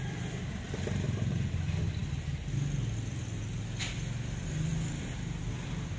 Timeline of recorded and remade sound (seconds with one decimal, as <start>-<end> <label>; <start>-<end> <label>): 0.0-6.0 recorded

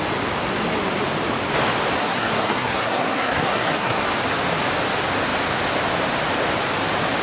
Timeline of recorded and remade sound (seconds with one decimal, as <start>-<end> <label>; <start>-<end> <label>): 0.0-2.0 recorded; 2.0-4.1 remade; 4.1-7.2 recorded

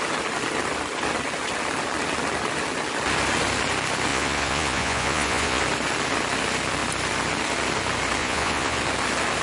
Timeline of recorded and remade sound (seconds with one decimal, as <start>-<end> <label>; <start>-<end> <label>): 0.0-4.1 recorded; 4.1-5.6 remade; 5.6-8.2 recorded; 8.2-8.8 remade; 8.8-9.4 recorded